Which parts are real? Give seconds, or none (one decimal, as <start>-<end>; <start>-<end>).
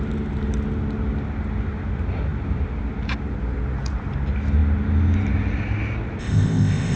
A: 0.0-6.2